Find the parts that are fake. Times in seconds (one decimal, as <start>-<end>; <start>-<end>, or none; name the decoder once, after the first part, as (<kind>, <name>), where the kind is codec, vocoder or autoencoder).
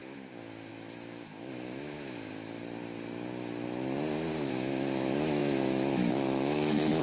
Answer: 0.0-2.6 (autoencoder, DAC-VAE); 4.5-7.0